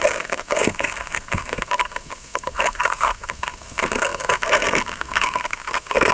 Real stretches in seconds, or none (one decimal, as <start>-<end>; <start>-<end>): none